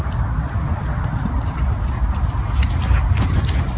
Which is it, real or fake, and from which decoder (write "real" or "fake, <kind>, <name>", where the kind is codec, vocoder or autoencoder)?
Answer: real